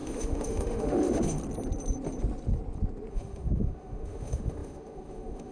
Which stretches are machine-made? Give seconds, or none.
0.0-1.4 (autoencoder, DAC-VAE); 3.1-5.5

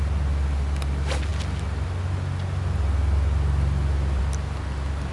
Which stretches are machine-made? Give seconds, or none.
none

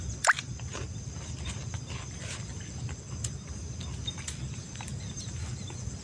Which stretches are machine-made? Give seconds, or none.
none

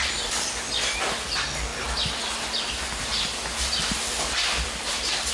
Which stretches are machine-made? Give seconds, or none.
none

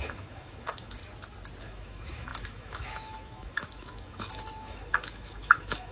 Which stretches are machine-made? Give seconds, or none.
0.0-1.0 (autoencoder, DAC-VAE); 1.6-5.9

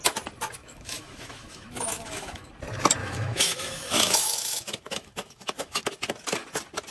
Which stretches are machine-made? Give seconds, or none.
0.6-2.5 (autoencoder, DAC-VAE); 3.0-5.9